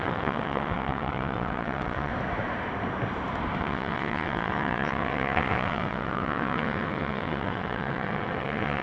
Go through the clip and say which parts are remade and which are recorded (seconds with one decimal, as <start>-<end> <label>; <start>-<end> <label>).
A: 0.0-2.1 remade; 2.1-3.6 recorded; 3.6-8.8 remade